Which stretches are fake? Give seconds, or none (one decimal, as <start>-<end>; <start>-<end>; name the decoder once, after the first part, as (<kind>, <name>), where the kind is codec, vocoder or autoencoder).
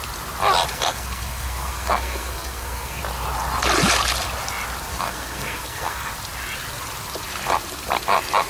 0.7-3.0 (codec, SNAC); 4.9-6.1